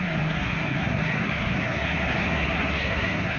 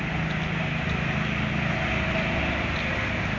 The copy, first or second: first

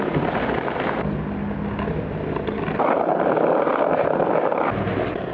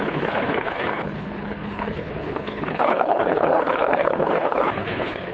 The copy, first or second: second